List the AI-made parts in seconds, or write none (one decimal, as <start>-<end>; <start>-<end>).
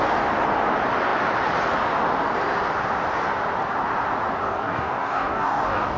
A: 4.4-6.0